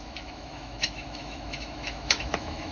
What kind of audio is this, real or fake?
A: fake